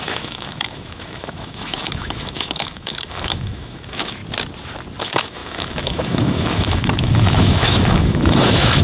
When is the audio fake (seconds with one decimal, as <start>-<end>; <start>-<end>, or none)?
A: 0.0-4.2; 5.0-8.8